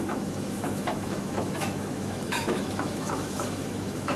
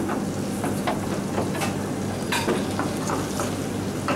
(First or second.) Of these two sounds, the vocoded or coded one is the first